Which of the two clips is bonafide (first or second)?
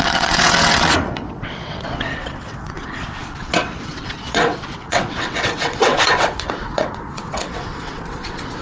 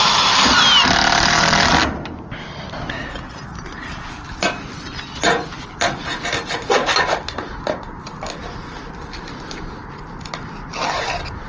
second